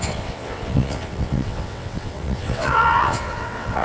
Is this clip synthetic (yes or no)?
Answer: yes